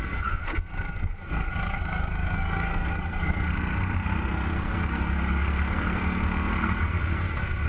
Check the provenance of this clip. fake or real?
fake